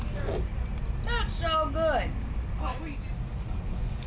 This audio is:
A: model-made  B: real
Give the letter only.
B